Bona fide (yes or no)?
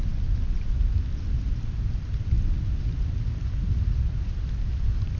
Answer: yes